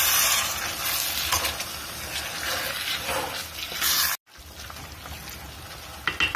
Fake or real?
real